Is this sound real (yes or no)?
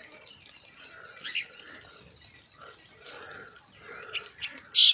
yes